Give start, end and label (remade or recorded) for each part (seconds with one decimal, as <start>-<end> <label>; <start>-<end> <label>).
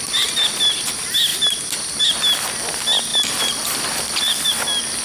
0.0-3.1 recorded; 3.1-4.5 remade; 4.5-5.0 recorded